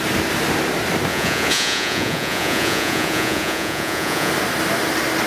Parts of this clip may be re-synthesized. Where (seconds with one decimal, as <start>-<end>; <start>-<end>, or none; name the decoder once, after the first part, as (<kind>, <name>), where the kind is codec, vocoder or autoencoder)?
1.1-4.3 (vocoder, Vocos)